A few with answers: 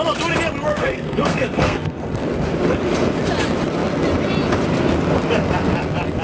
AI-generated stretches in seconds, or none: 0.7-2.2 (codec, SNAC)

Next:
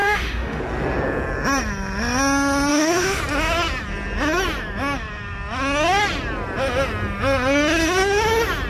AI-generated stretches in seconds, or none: 0.0-0.6 (autoencoder, DAC-VAE); 2.7-3.2

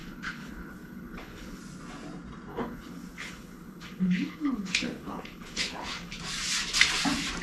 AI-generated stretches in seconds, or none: 0.0-1.6 (codec, HILCodec); 2.5-6.2

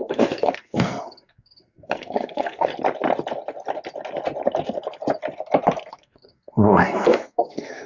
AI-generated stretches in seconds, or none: 0.0-2.7 (codec, SNAC); 5.9-7.9

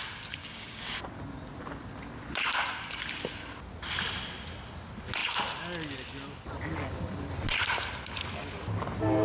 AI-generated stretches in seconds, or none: 0.4-1.0 (codec, DAC)

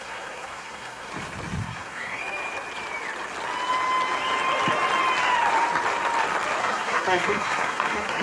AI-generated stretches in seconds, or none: 0.0-1.1 (codec, SNAC); 1.6-2.2; 6.6-8.2